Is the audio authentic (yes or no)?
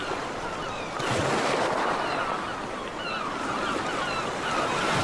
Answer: yes